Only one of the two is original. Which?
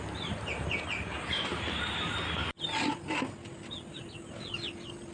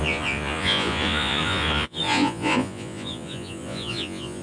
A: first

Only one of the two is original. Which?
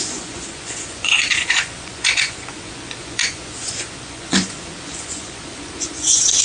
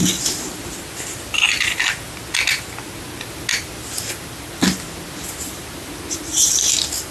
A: second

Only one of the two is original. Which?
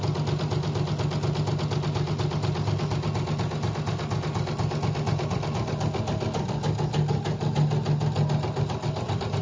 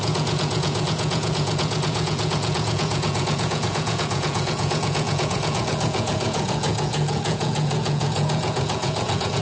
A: first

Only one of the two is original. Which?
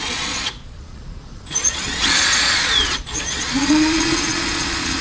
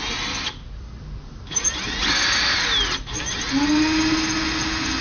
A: second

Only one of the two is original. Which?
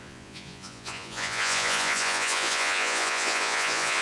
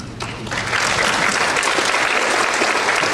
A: second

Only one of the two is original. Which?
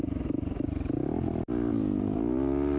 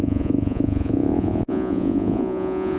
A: first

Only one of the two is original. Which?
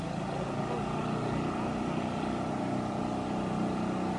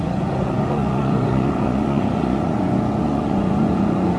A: first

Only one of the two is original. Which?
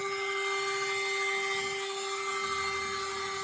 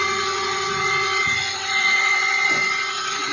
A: first